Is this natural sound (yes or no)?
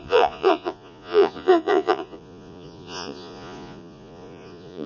no